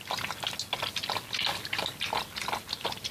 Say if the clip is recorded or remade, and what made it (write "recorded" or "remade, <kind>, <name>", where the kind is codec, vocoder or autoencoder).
recorded